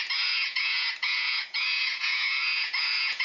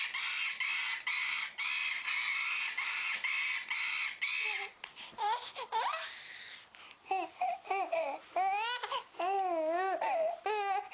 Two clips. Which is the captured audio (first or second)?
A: second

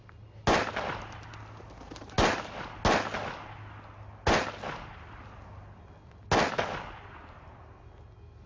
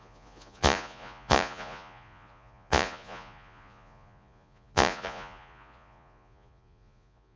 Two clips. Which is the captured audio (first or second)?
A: first